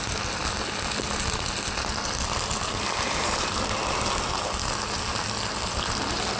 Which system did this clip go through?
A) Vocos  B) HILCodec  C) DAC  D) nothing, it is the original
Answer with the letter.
D